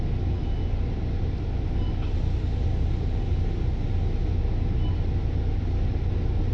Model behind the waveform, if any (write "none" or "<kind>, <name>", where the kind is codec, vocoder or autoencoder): none